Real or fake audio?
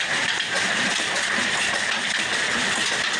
real